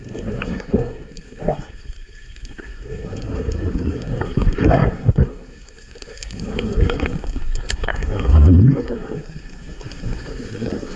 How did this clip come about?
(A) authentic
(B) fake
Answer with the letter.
B